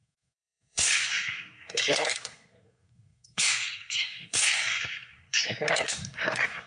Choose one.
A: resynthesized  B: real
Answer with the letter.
A